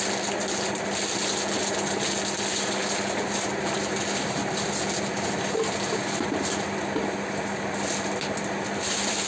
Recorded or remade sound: recorded